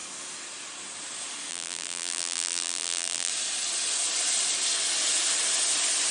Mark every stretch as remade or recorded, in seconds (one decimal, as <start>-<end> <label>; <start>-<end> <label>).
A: 0.0-1.5 recorded; 1.5-3.3 remade; 3.3-6.1 recorded